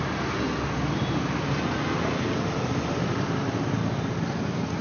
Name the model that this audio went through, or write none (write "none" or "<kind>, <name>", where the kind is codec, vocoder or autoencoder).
none